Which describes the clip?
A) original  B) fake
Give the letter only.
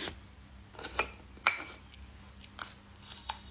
A